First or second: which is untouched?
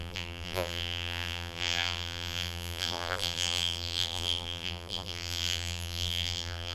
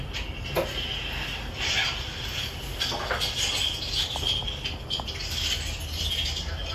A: second